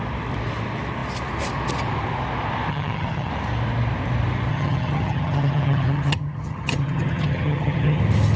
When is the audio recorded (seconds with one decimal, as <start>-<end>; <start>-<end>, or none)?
0.0-2.7; 3.3-4.5; 8.0-8.4